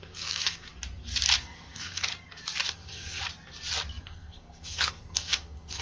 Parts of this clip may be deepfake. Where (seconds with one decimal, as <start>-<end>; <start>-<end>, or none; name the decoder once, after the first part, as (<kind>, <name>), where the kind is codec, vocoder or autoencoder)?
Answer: 0.0-0.7 (codec, SNAC); 1.4-2.1; 2.7-3.2; 4.0-5.8